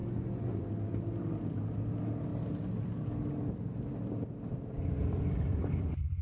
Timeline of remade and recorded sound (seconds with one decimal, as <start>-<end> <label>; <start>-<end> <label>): 0.0-0.7 remade; 0.7-6.2 recorded